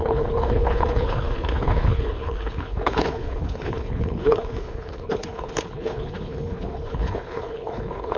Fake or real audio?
fake